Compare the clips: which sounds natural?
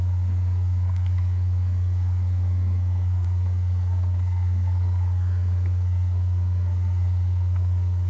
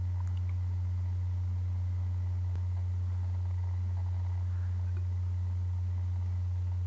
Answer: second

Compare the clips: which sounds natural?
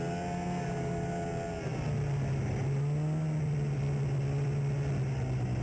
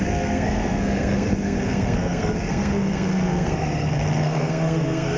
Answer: first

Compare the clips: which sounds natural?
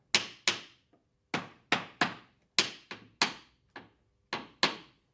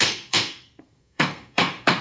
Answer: first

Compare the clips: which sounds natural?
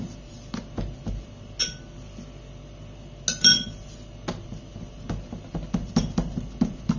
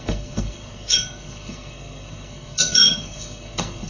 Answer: first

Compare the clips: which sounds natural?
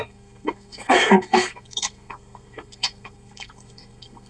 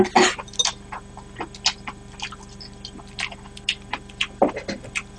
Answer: second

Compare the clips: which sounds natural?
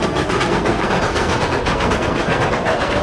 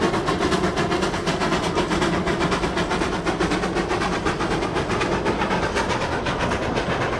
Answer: second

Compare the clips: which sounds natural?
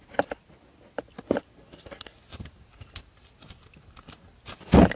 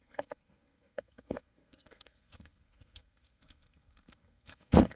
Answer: first